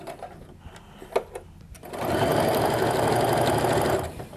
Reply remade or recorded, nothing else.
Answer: recorded